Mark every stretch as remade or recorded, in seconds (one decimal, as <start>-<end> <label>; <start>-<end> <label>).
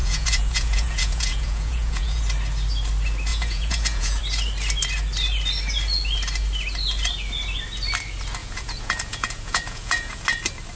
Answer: 0.0-2.2 remade; 2.2-3.3 recorded; 3.3-4.2 remade; 4.2-8.4 recorded; 8.4-10.2 remade; 10.2-10.8 recorded